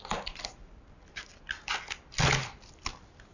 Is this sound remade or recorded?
recorded